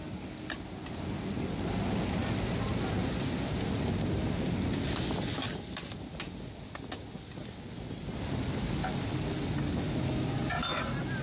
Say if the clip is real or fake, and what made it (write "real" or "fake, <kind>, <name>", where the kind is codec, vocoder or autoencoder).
real